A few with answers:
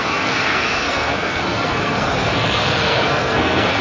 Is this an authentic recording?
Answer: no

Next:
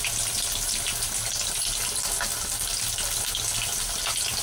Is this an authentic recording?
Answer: yes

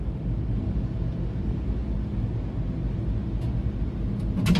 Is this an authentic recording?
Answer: yes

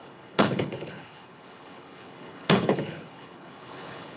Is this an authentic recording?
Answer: no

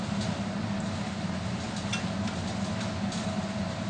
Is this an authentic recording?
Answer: yes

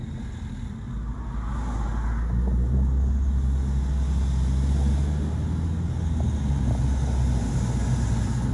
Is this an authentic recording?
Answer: yes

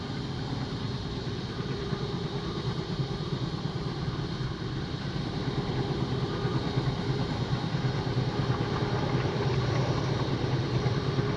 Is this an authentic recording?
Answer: no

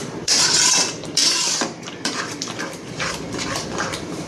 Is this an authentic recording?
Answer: no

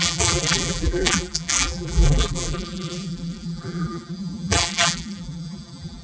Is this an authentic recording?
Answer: no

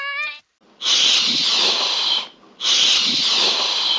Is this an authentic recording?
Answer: yes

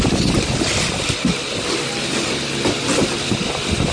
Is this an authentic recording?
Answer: yes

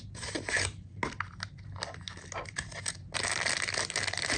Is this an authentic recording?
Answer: yes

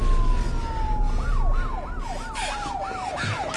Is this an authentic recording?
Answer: yes